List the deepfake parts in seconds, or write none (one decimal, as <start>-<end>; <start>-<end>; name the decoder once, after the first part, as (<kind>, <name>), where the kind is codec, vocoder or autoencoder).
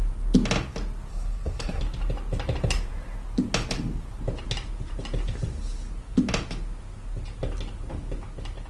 1.1-1.8 (codec, SNAC)